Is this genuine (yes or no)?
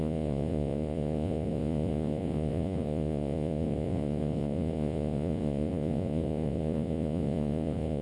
no